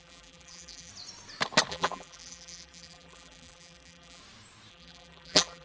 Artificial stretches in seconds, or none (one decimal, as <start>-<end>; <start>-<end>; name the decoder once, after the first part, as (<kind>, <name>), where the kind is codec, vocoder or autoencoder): 0.0-0.9 (vocoder, BigVGAN v2); 1.7-4.2; 4.7-5.6